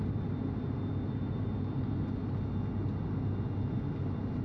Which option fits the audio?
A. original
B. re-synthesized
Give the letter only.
A